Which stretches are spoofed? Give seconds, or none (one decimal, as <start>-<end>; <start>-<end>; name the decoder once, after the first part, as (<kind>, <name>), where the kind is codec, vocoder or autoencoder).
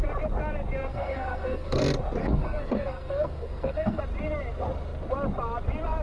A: 0.9-1.8 (codec, SNAC); 2.2-4.0